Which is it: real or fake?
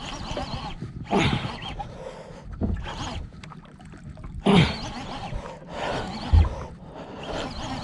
real